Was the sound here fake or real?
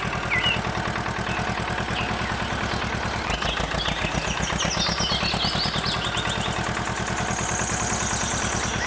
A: real